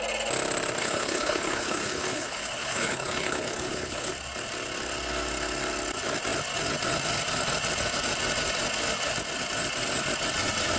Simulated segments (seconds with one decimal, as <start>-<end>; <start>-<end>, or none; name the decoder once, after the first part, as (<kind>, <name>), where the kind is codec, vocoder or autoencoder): 0.8-4.1 (codec, HILCodec)